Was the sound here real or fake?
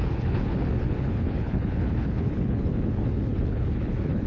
fake